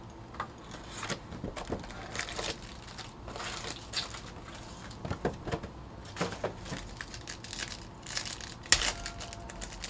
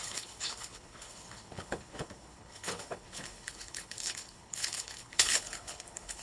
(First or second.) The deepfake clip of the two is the second